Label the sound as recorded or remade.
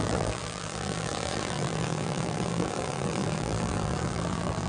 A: remade